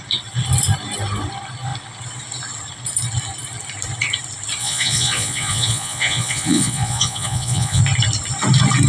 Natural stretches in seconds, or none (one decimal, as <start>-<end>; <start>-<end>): 0.0-4.6; 7.8-8.9